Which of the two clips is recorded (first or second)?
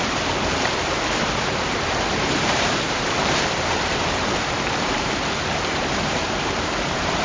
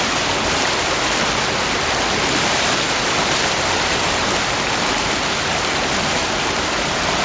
second